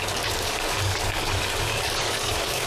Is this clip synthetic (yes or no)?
yes